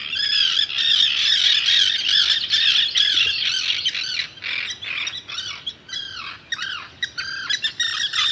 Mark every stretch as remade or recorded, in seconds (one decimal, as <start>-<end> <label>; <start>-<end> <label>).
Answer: 0.0-8.3 recorded